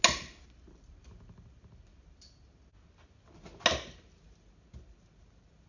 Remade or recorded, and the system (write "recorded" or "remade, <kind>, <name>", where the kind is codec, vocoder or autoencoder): recorded